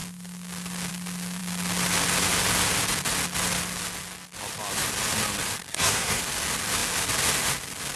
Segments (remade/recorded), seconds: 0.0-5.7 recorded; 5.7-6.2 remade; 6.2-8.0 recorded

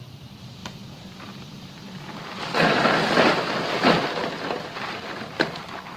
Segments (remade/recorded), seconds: 0.0-0.6 recorded; 0.6-2.4 remade; 2.4-6.0 recorded

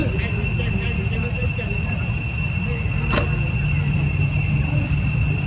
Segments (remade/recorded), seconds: 0.0-5.5 recorded

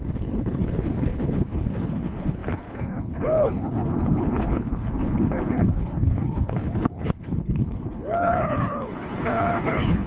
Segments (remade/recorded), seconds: 0.0-10.1 remade

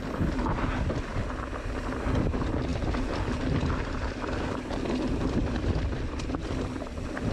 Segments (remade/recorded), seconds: 0.0-7.3 recorded

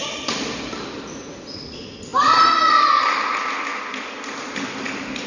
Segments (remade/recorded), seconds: 0.0-5.3 recorded

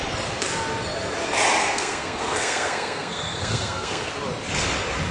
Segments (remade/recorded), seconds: 0.0-1.6 recorded; 1.6-4.1 remade; 4.1-5.1 recorded